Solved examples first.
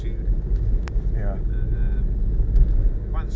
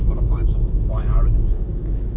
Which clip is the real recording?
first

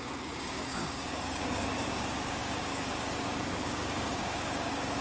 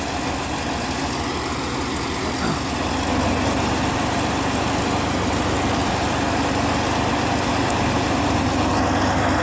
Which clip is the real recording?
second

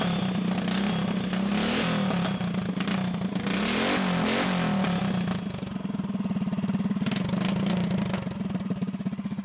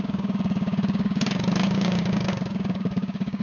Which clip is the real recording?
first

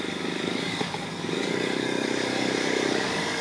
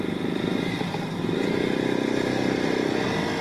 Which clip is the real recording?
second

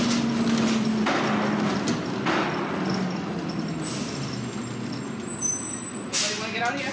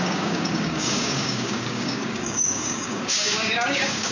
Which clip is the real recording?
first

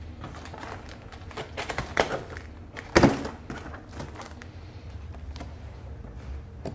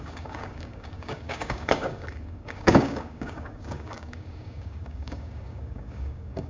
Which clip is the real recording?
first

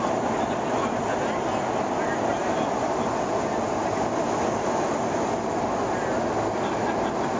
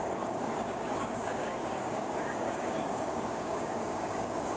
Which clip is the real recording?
first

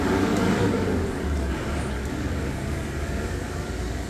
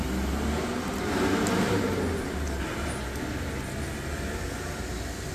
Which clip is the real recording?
second